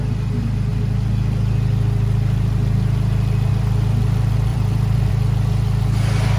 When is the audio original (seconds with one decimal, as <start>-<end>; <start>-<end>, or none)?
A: 0.0-4.5; 5.1-6.4